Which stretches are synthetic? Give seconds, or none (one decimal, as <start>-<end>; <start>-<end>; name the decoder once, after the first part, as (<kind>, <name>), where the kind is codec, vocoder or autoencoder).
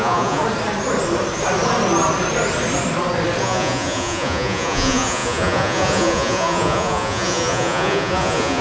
0.0-0.4 (vocoder, Vocos); 3.4-8.6